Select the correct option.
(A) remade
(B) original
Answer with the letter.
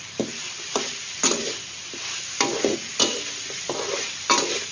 B